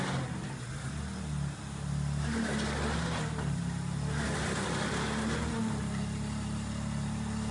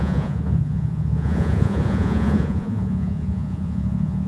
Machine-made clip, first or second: second